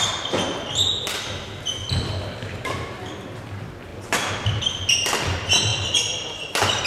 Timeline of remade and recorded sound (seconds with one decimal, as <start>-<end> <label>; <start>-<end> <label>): 0.0-1.8 recorded; 1.8-3.0 remade; 3.0-3.9 recorded; 3.9-4.6 remade; 4.6-5.7 recorded; 5.7-6.5 remade; 6.5-6.9 recorded